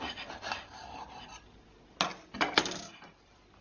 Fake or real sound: real